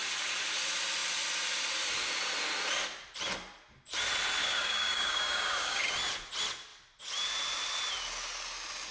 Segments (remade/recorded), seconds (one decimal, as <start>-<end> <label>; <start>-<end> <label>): 0.0-4.4 recorded; 4.4-5.8 remade; 5.8-8.9 recorded